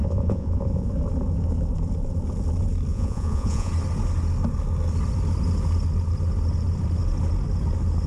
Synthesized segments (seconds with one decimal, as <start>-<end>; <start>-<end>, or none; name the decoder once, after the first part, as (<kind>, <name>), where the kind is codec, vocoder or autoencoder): 0.0-0.9 (vocoder, Vocos); 2.9-3.7